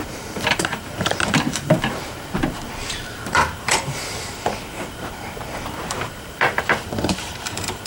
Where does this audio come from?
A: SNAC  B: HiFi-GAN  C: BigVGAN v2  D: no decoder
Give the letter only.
C